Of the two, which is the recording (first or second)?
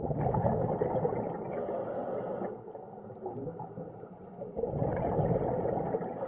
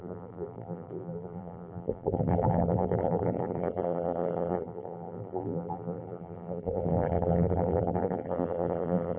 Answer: first